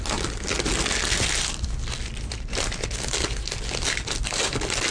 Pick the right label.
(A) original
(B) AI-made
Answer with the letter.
A